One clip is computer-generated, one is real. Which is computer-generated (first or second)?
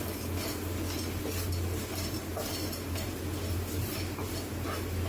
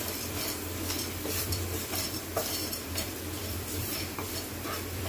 second